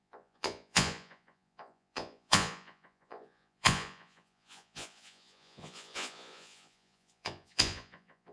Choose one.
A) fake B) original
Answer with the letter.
A